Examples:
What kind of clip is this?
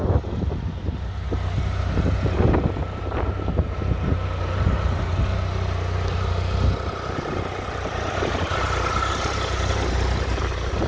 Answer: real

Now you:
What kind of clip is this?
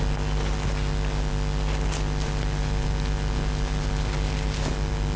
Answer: real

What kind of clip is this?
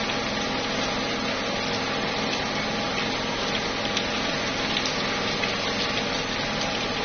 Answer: real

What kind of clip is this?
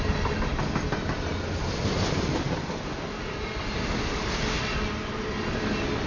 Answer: real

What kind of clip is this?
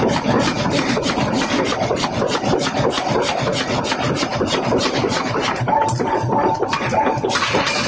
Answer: real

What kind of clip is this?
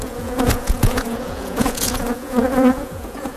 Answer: fake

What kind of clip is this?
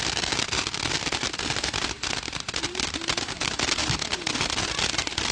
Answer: real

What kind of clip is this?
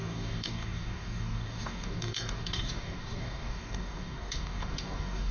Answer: fake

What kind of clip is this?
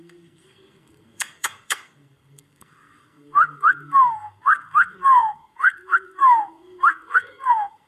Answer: fake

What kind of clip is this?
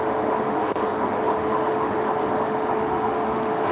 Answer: fake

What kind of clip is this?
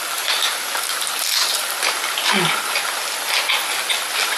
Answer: real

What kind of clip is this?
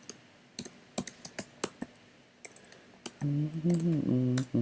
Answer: real